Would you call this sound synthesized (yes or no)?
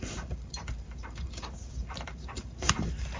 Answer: yes